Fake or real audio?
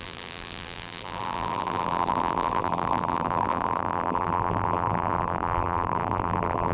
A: fake